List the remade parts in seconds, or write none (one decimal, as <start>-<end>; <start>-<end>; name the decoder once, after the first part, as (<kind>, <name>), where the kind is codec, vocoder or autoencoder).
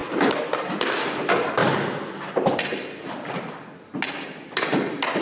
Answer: none